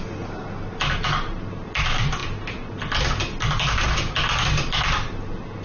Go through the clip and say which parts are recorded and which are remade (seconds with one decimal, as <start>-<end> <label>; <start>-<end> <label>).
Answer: 0.0-5.6 recorded